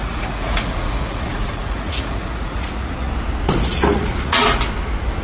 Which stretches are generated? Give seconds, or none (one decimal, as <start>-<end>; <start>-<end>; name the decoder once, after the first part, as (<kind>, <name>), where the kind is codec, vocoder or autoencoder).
0.0-3.1 (vocoder, Vocos); 3.7-4.6